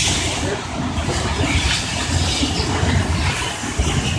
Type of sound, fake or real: real